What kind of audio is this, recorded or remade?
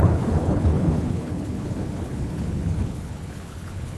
remade